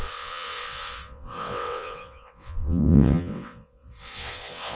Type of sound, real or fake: fake